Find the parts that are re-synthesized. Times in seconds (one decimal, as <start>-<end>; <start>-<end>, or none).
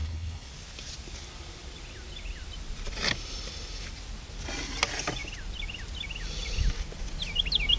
0.0-0.5